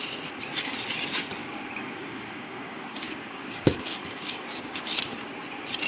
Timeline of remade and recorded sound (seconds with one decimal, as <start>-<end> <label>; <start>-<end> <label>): 0.0-1.4 recorded; 1.4-4.9 remade; 4.9-5.9 recorded